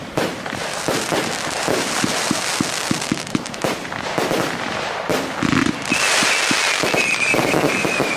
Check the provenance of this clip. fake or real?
fake